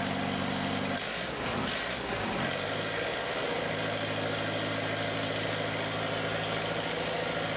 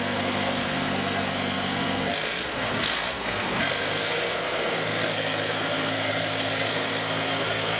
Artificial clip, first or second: second